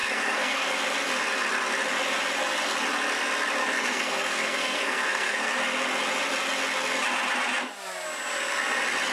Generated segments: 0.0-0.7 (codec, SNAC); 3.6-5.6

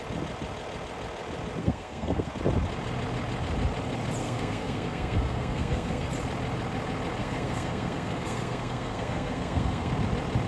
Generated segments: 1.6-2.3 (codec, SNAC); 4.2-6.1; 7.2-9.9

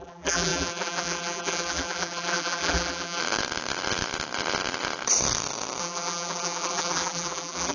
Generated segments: 0.0-3.2 (vocoder, BigVGAN v2); 5.8-7.7

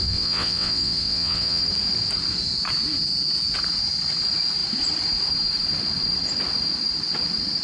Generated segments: 0.0-1.6 (vocoder, WaveNeXt)

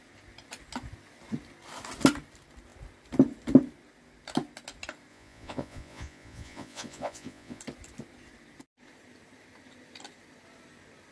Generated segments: 5.1-7.6 (vocoder, Vocos)

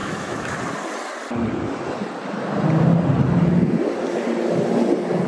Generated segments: 0.0-0.6 (autoencoder, DAC-VAE)

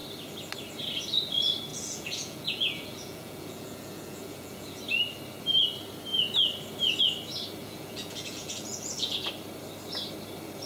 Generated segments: 1.7-4.8 (vocoder, Vocos); 7.6-9.3

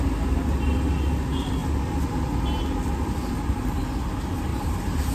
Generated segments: 4.5-5.1 (vocoder, BigVGAN v2)